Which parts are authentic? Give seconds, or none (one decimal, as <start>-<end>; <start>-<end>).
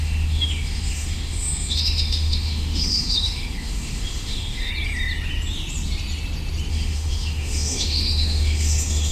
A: 4.7-6.7